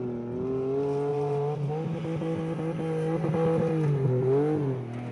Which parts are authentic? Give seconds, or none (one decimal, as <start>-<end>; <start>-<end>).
0.0-1.1; 1.7-5.1